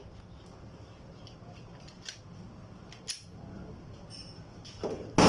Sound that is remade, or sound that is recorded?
recorded